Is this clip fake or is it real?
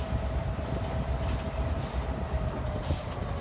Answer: real